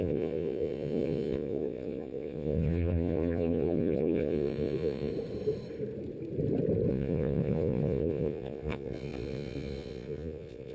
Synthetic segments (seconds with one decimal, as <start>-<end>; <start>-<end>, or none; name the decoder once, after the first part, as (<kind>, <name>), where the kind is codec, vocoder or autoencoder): 0.0-5.1 (vocoder, Vocos); 6.9-10.7